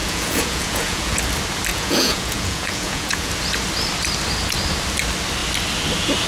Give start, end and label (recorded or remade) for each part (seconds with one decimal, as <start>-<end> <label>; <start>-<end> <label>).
0.0-1.2 remade; 1.2-1.7 recorded; 1.7-3.3 remade; 3.3-6.3 recorded